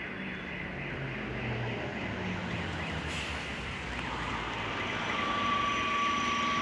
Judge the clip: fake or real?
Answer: real